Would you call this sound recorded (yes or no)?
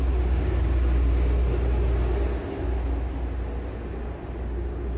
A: yes